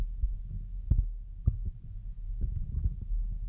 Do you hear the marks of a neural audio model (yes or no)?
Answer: no